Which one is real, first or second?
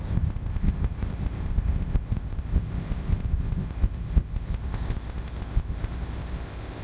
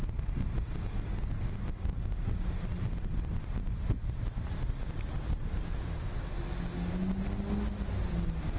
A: second